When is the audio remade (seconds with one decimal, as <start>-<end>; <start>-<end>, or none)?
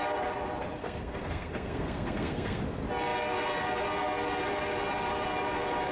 0.8-2.6